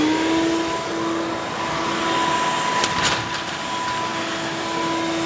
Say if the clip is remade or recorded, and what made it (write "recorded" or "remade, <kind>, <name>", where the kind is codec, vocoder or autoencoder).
recorded